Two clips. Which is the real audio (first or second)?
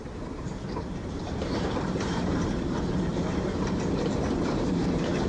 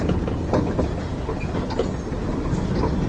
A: second